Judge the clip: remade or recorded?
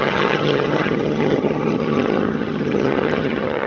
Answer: remade